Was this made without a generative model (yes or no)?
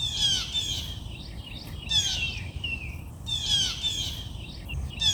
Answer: no